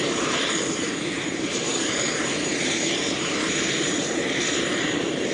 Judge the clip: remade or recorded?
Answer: remade